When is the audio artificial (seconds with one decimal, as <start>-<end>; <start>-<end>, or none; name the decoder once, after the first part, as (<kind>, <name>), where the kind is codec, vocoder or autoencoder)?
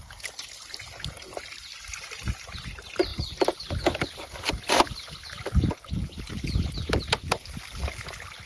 none